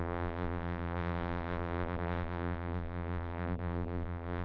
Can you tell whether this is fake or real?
fake